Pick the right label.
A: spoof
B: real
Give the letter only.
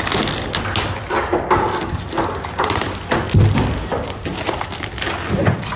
B